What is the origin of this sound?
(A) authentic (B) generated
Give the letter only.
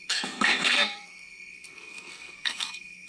B